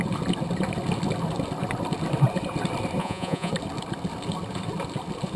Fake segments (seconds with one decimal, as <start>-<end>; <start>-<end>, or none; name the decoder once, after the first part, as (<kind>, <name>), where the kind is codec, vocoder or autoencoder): 3.0-3.5 (vocoder, Vocos)